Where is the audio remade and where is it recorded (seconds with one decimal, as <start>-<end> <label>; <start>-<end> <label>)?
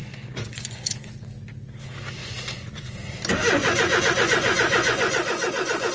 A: 0.0-1.1 remade; 1.1-2.2 recorded; 2.2-3.2 remade; 3.2-3.6 recorded; 3.6-5.9 remade